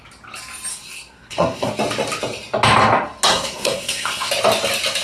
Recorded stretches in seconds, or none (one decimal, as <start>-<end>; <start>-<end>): 0.0-0.7; 1.7-3.3; 4.3-5.0